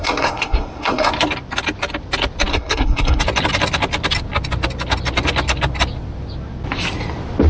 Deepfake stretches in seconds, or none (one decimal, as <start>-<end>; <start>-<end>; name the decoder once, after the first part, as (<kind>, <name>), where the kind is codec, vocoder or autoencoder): 0.0-1.1 (codec, SNAC); 2.5-3.2